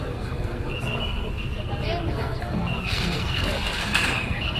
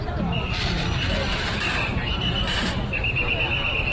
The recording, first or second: second